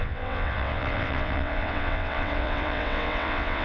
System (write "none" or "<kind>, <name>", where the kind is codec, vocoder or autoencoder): vocoder, WaveNeXt